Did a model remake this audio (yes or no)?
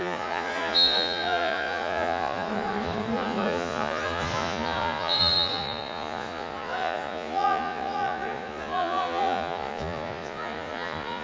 yes